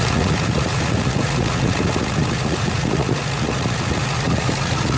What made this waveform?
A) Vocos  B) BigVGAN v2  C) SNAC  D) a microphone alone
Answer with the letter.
A